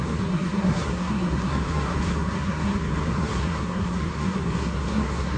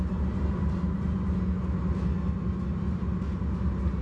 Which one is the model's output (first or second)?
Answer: first